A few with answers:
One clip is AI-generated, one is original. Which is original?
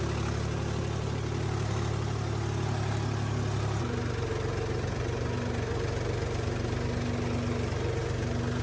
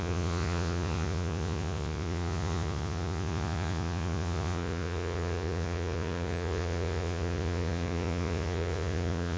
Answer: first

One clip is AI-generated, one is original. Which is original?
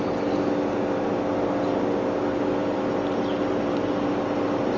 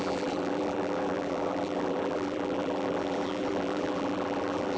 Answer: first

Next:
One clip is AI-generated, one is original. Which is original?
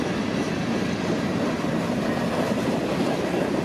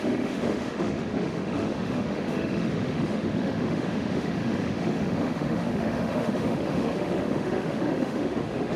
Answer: first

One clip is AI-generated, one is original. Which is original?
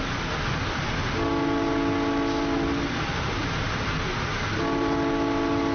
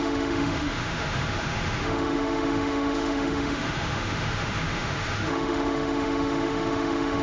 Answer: first